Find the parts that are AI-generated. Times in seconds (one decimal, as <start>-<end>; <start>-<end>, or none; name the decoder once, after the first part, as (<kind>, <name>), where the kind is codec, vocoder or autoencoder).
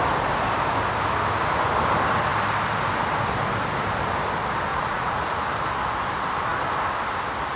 4.7-5.4 (vocoder, Vocos)